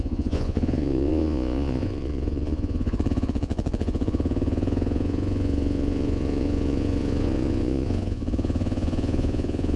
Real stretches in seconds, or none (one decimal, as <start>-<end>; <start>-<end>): none